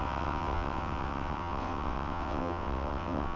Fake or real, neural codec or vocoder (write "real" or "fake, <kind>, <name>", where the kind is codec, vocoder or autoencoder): fake, vocoder, WaveNeXt